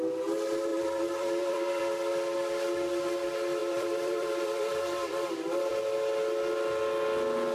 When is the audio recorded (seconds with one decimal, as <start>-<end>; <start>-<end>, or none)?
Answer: 0.0-0.7; 1.8-3.6; 5.7-7.5